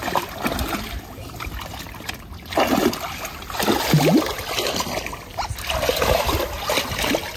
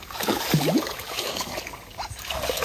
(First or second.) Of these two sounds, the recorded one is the first